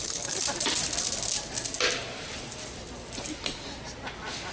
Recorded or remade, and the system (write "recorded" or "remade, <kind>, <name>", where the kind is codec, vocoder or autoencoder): recorded